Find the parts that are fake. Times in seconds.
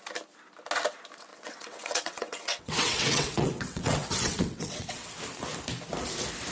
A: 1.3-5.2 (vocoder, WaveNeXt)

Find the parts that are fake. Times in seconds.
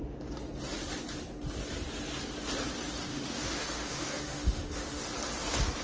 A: 3.1-5.0 (autoencoder, DAC-VAE)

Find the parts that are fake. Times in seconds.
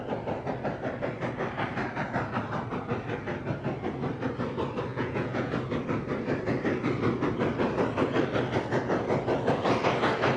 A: 4.9-5.5 (vocoder, Vocos)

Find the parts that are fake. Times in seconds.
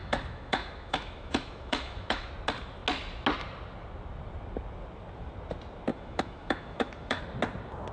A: 0.0-2.3 (autoencoder, DAC-VAE); 5.9-7.2